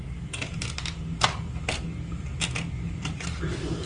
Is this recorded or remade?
recorded